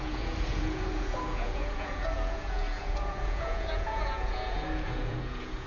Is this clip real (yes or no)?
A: no